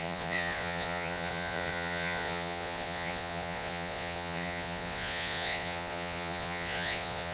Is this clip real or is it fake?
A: fake